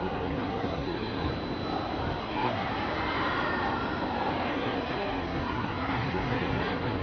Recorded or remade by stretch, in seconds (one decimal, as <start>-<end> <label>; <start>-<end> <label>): 0.0-1.3 remade; 1.3-2.2 recorded; 2.2-2.7 remade; 2.7-4.5 recorded; 4.5-7.0 remade

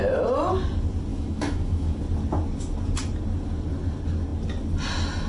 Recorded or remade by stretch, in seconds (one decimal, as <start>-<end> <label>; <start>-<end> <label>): 0.0-1.1 recorded; 1.1-2.0 remade; 2.0-5.3 recorded

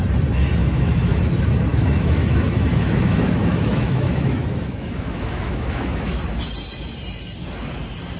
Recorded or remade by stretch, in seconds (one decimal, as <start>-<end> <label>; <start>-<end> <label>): 0.0-0.6 recorded; 0.6-1.2 remade; 1.2-1.7 recorded; 1.7-6.2 remade; 6.2-8.2 recorded

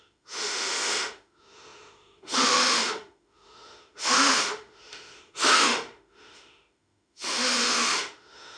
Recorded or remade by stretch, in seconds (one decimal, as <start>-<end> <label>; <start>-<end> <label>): 0.0-8.6 remade

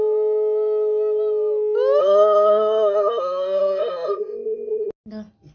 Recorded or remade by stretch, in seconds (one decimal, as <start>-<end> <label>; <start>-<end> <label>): 0.0-2.0 recorded; 2.0-4.9 remade; 4.9-5.5 recorded

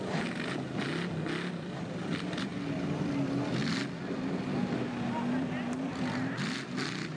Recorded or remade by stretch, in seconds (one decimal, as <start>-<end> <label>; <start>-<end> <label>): 0.0-7.2 recorded